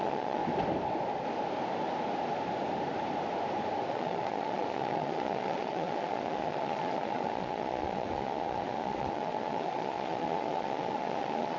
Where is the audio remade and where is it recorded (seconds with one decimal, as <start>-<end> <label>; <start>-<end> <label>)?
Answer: 0.0-0.4 remade; 0.4-3.9 recorded; 3.9-11.6 remade